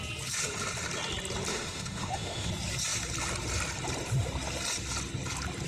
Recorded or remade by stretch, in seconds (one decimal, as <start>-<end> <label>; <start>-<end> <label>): 0.0-1.5 recorded; 1.5-2.5 remade; 2.5-5.7 recorded